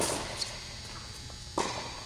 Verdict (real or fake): real